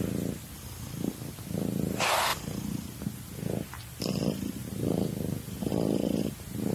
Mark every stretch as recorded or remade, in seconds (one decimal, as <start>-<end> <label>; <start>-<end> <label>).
0.0-6.7 recorded